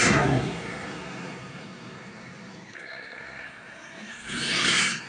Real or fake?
fake